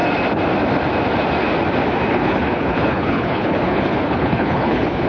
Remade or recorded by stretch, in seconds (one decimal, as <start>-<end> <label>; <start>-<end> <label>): 0.0-2.1 recorded; 2.1-5.1 remade